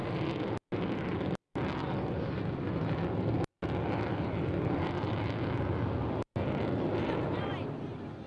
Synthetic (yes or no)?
no